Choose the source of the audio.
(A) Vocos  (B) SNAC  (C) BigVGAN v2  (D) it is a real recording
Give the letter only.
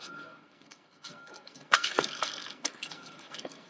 B